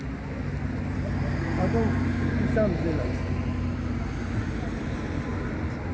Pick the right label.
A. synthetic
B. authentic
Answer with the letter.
B